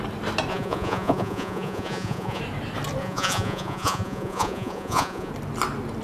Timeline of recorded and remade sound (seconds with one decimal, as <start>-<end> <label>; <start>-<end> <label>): 0.0-0.5 recorded; 0.5-2.4 remade; 2.4-3.0 recorded; 3.0-5.3 remade; 5.3-6.0 recorded